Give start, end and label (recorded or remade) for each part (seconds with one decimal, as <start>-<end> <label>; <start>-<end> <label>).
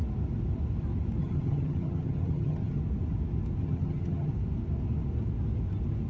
0.0-1.2 recorded; 1.2-2.8 remade; 2.8-3.6 recorded; 3.6-4.3 remade; 4.3-6.1 recorded